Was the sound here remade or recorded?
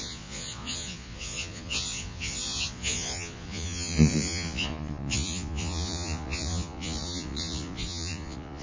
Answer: remade